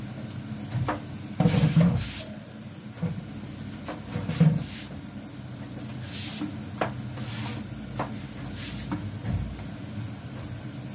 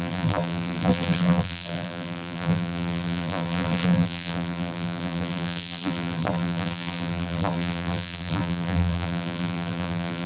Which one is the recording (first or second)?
first